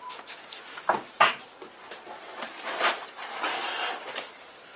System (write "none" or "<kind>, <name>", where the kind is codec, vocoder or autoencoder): vocoder, BigVGAN v2